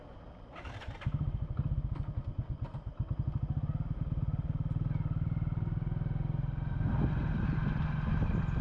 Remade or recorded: recorded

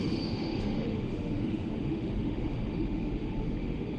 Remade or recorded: remade